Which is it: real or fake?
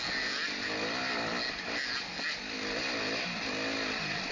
real